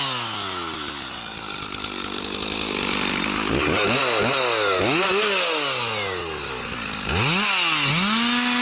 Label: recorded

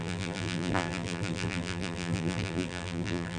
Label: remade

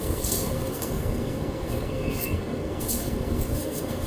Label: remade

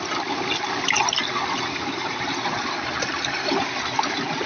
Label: recorded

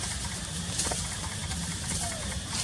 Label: recorded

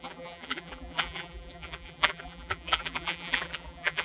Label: remade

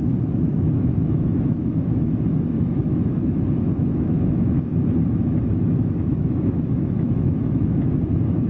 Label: remade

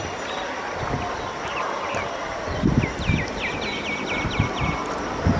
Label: recorded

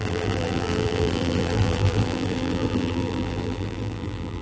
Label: remade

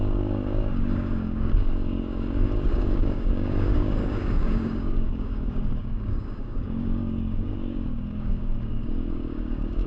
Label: remade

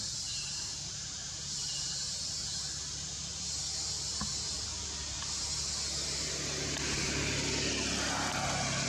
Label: recorded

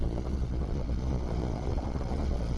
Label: remade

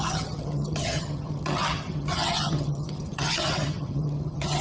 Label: remade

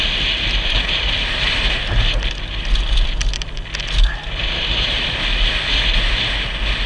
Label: recorded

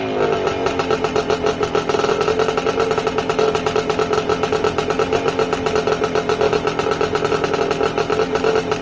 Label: recorded